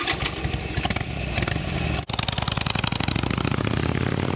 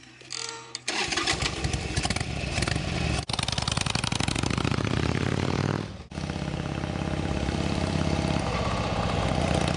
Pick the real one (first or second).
first